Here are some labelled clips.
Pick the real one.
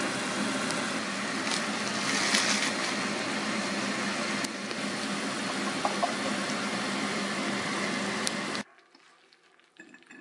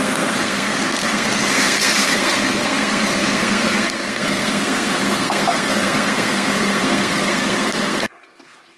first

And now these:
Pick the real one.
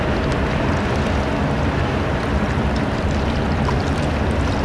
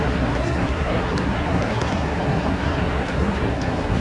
first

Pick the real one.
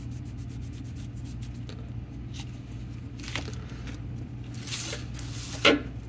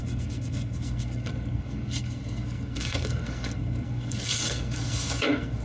first